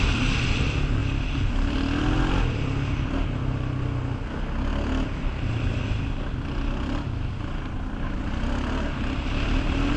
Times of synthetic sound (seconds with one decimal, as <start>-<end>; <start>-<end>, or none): none